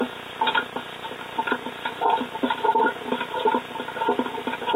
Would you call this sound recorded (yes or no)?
yes